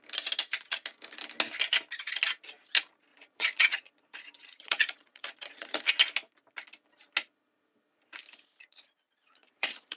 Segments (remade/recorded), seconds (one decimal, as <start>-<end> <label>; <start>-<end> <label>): 0.0-3.1 recorded; 3.1-5.8 remade; 5.8-8.6 recorded; 8.6-10.0 remade